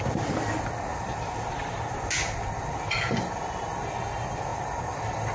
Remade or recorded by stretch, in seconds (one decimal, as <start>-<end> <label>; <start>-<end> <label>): 0.0-5.3 recorded